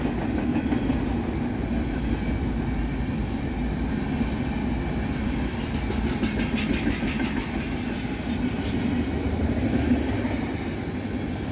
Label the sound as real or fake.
real